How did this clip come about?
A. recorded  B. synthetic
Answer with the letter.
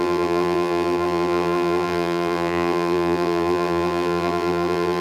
B